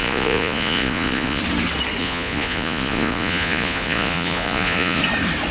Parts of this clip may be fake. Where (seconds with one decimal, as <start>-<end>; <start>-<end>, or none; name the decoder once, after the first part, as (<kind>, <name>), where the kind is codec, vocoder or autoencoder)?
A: 0.0-1.4 (vocoder, Vocos); 2.0-5.0